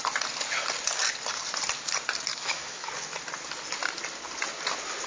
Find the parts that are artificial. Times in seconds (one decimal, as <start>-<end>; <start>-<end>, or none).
2.3-2.9